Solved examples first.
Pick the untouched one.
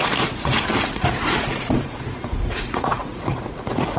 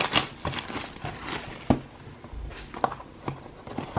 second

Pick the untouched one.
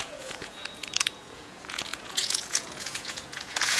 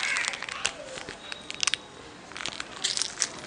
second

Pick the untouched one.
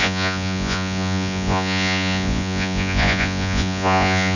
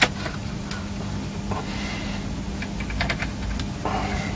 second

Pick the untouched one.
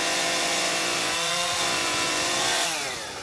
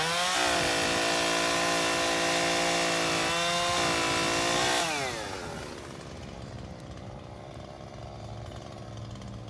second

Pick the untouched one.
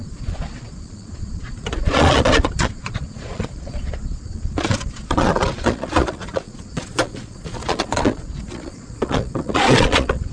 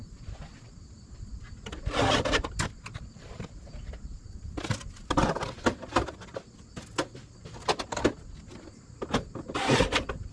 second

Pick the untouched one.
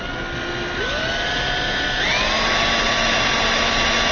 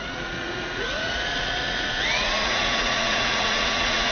first